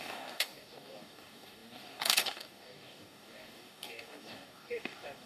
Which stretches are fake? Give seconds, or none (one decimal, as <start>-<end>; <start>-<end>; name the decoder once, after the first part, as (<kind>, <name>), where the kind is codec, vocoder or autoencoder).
0.0-5.3 (codec, DAC)